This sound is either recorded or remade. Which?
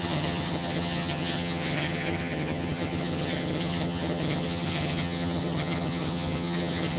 remade